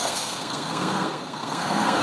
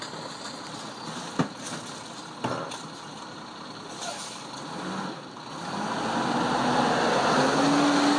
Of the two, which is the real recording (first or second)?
second